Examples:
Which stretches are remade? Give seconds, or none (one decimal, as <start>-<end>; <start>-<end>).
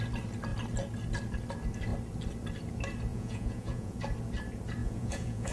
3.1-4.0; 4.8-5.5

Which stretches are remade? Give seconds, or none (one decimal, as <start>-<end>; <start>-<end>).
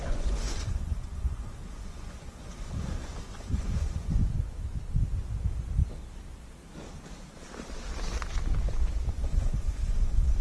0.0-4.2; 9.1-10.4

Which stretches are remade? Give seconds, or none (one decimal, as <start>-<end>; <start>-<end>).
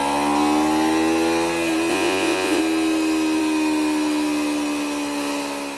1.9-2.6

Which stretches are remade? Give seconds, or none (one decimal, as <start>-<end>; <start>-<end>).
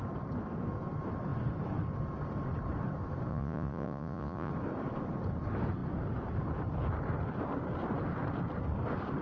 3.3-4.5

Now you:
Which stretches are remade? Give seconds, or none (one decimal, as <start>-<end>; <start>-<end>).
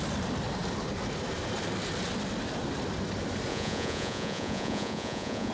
3.5-5.5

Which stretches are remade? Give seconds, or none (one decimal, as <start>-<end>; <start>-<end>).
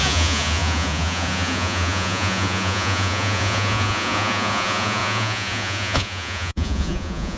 0.0-7.4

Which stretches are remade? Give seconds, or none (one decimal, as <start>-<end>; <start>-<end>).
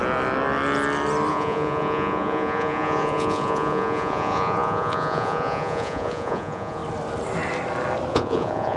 1.3-6.8; 8.1-8.8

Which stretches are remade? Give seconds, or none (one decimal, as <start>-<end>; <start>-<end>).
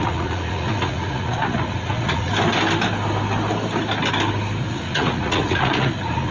0.0-2.3; 4.6-6.3